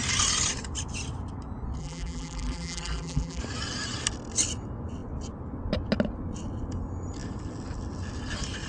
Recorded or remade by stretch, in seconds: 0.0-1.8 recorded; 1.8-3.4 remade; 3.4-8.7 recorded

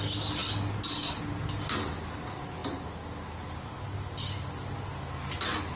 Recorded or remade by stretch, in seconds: 0.0-5.8 recorded

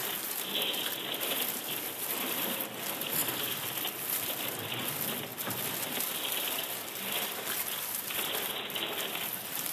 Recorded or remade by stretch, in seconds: 0.0-9.7 recorded

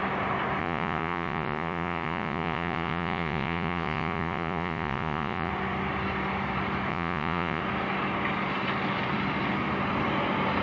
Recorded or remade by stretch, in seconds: 0.0-0.6 recorded; 0.6-5.5 remade; 5.5-6.9 recorded; 6.9-7.6 remade; 7.6-10.6 recorded

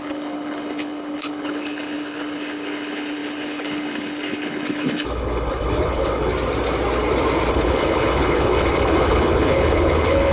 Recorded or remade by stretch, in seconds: 0.0-6.3 remade; 6.3-7.5 recorded; 7.5-10.3 remade

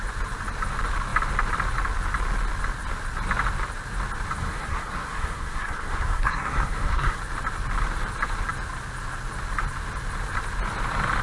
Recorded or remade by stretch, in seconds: 0.0-4.4 recorded; 4.4-7.2 remade; 7.2-11.2 recorded

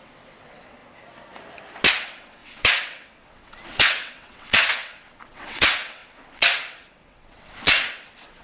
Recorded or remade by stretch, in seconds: 0.0-0.8 remade; 0.8-1.9 recorded; 1.9-8.4 remade

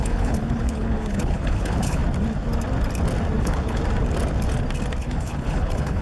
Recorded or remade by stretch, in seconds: 0.0-2.0 remade; 2.0-3.4 recorded; 3.4-3.8 remade; 3.8-5.0 recorded; 5.0-6.0 remade